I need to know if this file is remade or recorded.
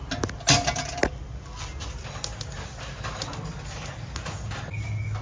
recorded